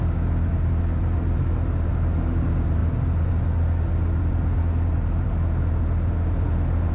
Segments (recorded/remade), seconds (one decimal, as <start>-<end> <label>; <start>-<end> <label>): 0.0-6.9 recorded